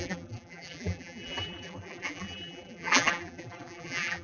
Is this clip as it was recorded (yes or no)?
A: no